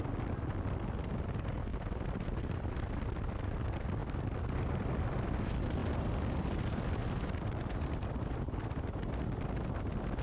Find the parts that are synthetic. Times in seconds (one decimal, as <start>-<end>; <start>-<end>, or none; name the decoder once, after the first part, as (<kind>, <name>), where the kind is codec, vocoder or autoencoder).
1.7-2.4 (vocoder, BigVGAN v2); 4.0-5.1; 5.8-7.6